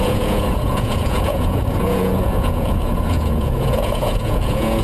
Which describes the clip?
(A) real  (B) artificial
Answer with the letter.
B